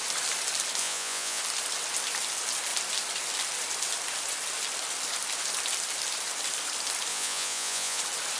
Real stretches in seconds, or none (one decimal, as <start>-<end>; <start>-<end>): 0.0-0.8; 1.4-7.1; 8.0-8.4